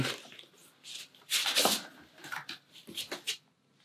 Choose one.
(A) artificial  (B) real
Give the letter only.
B